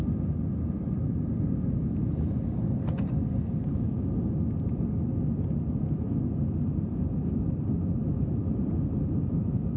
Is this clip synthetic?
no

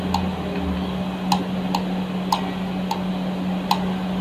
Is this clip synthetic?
no